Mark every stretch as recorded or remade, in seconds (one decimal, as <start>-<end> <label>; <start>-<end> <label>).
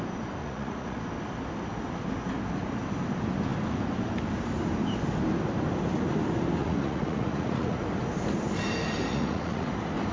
0.0-0.4 recorded; 0.4-1.0 remade; 1.0-6.6 recorded; 6.6-7.8 remade; 7.8-9.1 recorded; 9.1-9.7 remade; 9.7-10.1 recorded